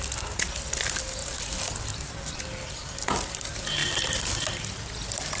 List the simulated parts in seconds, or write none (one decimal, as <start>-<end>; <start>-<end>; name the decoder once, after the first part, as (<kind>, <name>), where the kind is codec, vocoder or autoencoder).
none